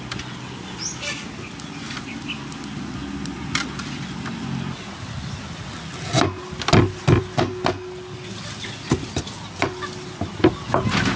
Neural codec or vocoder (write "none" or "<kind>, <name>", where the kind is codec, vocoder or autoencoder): none